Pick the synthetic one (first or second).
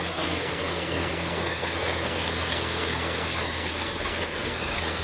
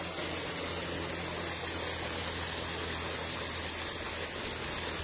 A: first